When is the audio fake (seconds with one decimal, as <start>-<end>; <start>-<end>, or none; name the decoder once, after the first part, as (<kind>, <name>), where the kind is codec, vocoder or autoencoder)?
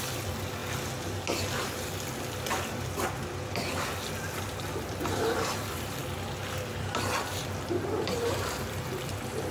0.0-0.6 (vocoder, BigVGAN v2); 4.2-6.0; 6.5-9.5